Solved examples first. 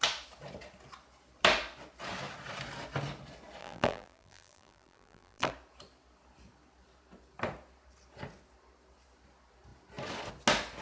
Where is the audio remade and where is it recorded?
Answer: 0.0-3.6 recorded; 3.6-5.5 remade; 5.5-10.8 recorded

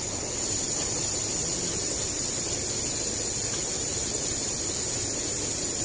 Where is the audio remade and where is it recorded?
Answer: 0.0-3.6 recorded; 3.6-4.5 remade; 4.5-5.8 recorded